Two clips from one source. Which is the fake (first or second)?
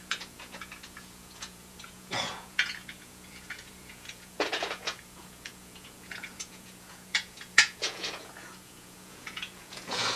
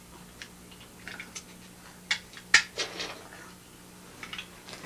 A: first